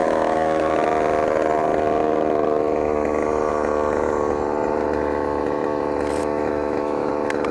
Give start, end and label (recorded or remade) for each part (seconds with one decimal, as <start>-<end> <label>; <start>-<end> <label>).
0.0-0.7 remade; 0.7-6.2 recorded; 6.2-7.1 remade; 7.1-7.5 recorded